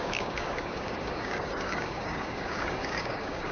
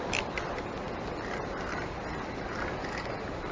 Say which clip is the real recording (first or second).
second